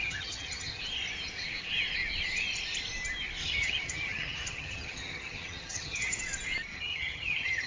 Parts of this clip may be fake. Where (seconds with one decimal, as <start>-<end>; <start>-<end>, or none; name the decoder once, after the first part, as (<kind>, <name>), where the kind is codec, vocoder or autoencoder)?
0.0-0.8 (vocoder, HiFi-GAN); 3.4-6.2; 6.7-7.7